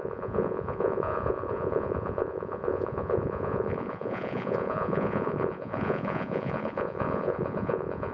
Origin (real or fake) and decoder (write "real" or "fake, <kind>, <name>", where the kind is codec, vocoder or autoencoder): fake, vocoder, Vocos